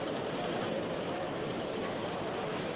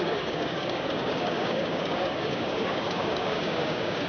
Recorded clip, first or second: first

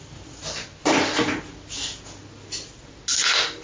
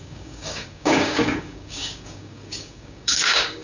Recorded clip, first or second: first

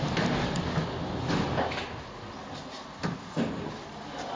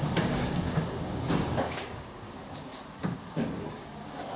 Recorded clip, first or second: first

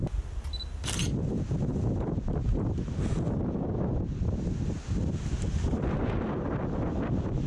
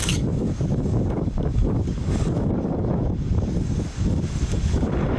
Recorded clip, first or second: first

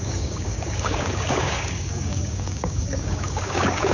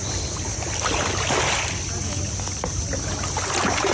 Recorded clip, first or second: second